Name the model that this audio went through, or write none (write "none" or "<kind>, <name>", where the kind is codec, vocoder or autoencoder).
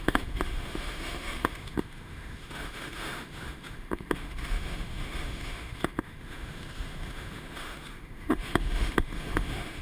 autoencoder, DAC-VAE